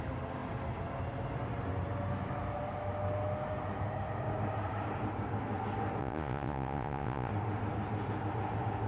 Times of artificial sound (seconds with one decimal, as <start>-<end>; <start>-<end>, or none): 6.0-7.3